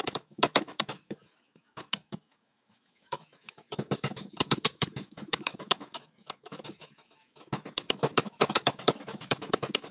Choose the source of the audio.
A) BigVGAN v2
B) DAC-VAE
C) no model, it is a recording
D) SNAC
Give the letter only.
B